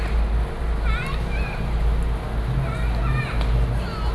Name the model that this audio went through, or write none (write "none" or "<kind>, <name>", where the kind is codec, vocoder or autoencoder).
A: none